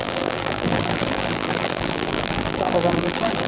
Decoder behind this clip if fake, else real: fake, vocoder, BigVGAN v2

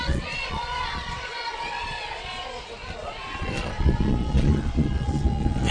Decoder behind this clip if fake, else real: fake, vocoder, Vocos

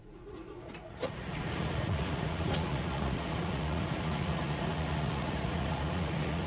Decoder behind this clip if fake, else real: fake, vocoder, Vocos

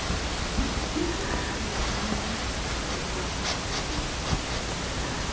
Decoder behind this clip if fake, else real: real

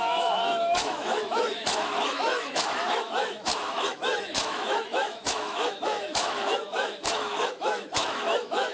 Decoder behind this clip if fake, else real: fake, autoencoder, DAC-VAE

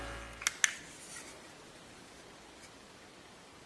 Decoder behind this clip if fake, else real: real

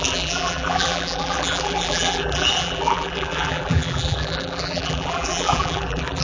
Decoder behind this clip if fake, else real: fake, vocoder, BigVGAN v2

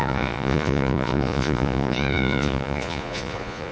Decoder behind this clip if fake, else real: fake, vocoder, Vocos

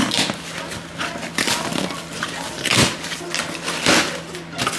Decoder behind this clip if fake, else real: real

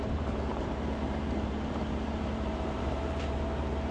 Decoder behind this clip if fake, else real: fake, vocoder, BigVGAN v2